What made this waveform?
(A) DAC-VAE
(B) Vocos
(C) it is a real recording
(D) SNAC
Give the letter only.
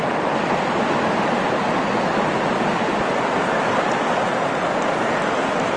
C